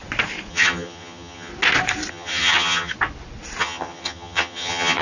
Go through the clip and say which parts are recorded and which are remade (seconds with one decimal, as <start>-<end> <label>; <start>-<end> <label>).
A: 0.0-0.5 recorded; 0.5-1.5 remade; 1.5-2.1 recorded; 2.1-2.9 remade; 2.9-3.6 recorded; 3.6-5.0 remade

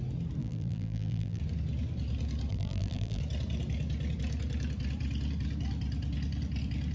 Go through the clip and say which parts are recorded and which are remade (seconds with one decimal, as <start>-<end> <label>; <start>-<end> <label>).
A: 0.0-0.4 recorded; 0.4-1.4 remade; 1.4-2.5 recorded; 2.5-3.2 remade; 3.2-6.9 recorded

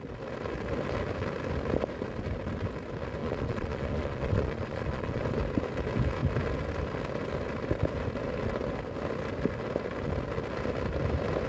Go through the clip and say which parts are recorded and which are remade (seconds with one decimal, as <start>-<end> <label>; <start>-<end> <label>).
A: 0.0-3.2 recorded; 3.2-5.2 remade; 5.2-11.5 recorded

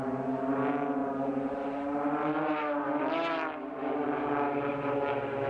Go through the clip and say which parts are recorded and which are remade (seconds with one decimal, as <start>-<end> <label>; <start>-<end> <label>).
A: 0.0-4.0 remade; 4.0-4.7 recorded; 4.7-5.5 remade

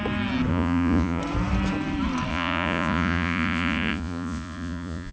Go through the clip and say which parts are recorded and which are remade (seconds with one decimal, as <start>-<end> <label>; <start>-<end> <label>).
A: 0.0-0.5 recorded; 0.5-1.2 remade; 1.2-2.3 recorded; 2.3-5.1 remade

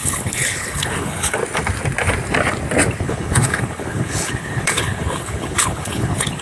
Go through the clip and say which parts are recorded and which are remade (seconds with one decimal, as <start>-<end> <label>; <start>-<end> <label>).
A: 0.0-1.4 remade; 1.4-3.0 recorded; 3.0-6.4 remade

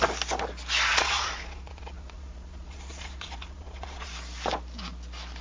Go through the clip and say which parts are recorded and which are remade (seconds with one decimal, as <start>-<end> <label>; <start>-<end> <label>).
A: 0.0-0.9 recorded; 0.9-4.1 remade; 4.1-5.4 recorded

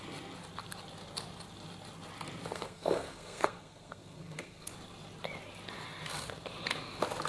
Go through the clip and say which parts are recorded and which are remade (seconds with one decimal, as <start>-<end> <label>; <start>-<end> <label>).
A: 0.0-2.5 recorded; 2.5-4.7 remade; 4.7-7.3 recorded